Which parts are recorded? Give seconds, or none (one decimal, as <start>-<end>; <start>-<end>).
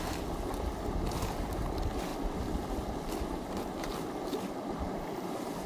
0.0-5.7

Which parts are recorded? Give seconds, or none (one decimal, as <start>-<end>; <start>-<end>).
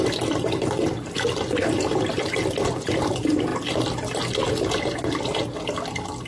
0.0-6.3